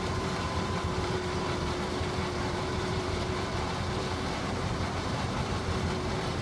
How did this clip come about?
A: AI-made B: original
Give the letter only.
A